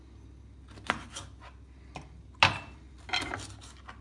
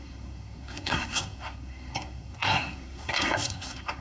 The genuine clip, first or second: first